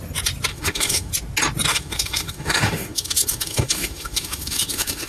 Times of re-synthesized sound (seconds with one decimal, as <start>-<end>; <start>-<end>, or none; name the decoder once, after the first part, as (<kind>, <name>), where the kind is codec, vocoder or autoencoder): 0.5-1.1 (autoencoder, DAC-VAE); 1.7-5.1